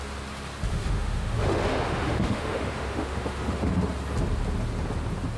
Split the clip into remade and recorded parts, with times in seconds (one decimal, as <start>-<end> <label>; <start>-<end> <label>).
0.0-0.7 recorded; 0.7-3.7 remade; 3.7-5.4 recorded